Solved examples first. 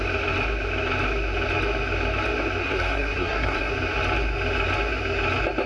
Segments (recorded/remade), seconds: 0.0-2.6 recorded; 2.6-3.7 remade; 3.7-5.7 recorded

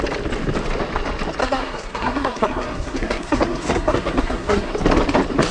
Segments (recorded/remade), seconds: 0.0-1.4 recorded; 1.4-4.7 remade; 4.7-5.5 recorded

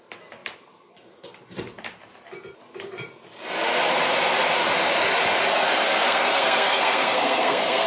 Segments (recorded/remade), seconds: 0.0-6.0 recorded; 6.0-7.9 remade